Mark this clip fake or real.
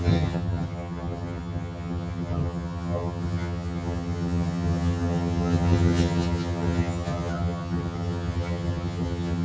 fake